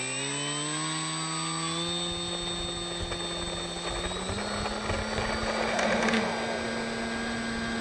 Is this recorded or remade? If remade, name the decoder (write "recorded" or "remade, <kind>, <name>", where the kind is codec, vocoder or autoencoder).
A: recorded